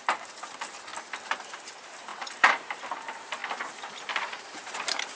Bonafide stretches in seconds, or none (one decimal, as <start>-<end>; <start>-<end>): 0.9-1.6; 3.4-4.1